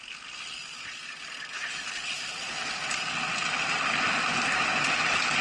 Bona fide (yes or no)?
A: yes